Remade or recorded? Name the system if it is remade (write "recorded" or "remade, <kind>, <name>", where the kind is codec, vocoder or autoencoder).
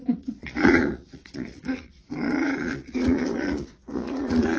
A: remade, vocoder, Vocos